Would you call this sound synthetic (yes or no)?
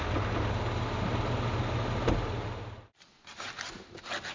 no